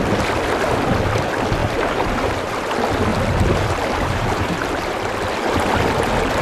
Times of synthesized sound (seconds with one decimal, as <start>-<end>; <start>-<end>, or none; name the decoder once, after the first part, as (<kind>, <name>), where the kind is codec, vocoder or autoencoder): 1.6-2.7 (vocoder, BigVGAN v2); 3.1-4.9